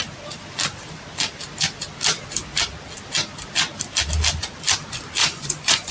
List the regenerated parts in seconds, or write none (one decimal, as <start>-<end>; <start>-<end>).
5.2-5.9